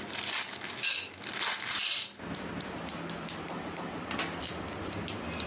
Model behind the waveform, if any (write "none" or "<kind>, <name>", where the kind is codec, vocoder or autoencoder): none